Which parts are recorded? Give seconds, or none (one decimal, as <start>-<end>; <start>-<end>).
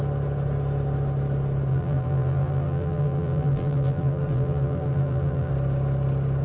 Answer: 0.0-1.7; 5.5-6.4